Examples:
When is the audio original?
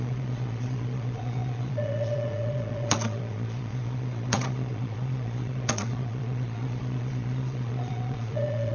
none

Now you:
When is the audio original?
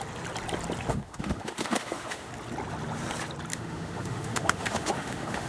0.0-0.9; 2.3-3.5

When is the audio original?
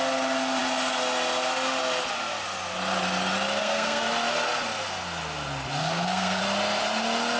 0.0-3.6; 4.1-5.8; 6.4-7.4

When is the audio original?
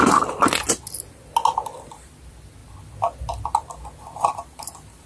0.0-5.1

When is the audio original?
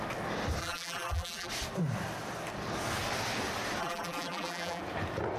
0.0-0.6; 1.5-3.8; 4.8-5.4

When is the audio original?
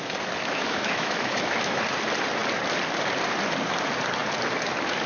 0.0-0.4; 1.8-5.1